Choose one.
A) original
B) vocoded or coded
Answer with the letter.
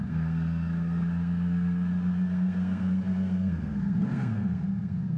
B